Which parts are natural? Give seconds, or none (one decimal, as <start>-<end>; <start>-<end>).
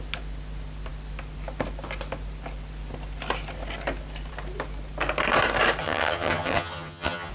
0.0-5.8